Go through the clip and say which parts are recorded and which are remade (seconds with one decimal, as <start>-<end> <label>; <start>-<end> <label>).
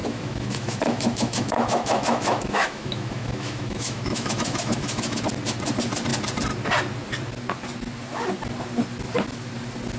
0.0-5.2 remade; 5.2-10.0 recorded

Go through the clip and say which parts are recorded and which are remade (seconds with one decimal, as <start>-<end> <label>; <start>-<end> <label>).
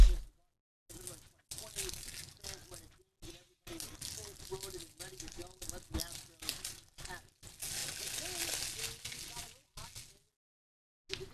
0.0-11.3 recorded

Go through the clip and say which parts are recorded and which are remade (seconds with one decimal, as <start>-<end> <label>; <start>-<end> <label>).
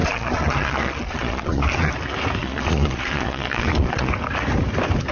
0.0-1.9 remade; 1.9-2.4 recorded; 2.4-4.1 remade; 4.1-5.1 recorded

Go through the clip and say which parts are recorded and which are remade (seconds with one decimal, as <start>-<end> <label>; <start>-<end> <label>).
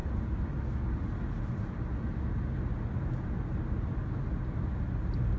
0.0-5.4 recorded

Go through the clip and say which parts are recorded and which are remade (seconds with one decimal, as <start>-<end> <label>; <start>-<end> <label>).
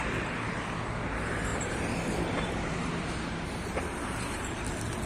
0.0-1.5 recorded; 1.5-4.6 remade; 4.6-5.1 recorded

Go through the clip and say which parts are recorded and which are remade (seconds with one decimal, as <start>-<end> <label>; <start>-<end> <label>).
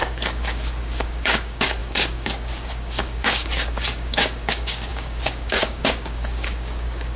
0.0-7.2 remade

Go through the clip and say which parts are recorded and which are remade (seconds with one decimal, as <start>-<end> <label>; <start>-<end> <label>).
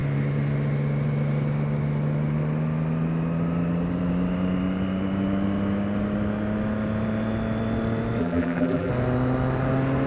0.0-8.2 recorded; 8.2-8.9 remade; 8.9-10.1 recorded